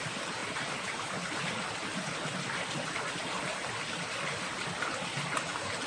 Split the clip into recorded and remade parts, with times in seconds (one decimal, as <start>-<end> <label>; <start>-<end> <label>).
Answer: 0.0-5.9 recorded